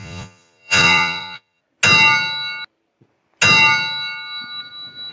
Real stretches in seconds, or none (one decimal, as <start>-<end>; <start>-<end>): 1.6-5.1

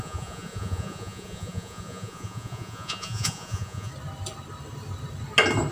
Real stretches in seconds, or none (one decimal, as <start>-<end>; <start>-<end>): 3.9-5.7

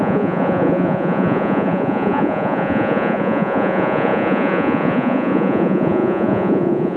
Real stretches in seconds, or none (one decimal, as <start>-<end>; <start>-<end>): none

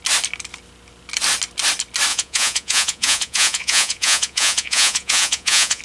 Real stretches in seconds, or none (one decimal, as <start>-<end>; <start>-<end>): 0.0-2.1

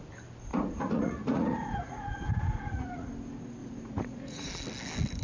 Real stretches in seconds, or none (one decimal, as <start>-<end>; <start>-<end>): 0.0-0.5; 3.1-3.6; 4.5-5.2